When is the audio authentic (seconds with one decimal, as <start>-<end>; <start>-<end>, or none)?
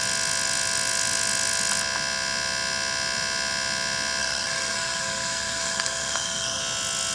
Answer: 0.0-4.2; 6.6-7.1